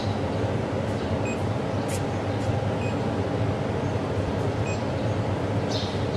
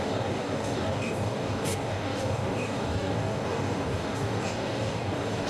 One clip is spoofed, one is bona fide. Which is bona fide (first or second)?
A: first